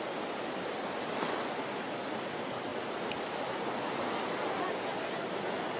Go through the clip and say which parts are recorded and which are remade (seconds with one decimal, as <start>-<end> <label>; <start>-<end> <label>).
0.0-5.8 recorded